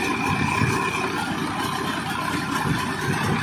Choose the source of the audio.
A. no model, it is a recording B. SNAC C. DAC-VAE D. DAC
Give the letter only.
A